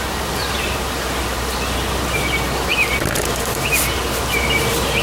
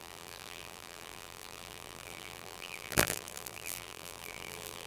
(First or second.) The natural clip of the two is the first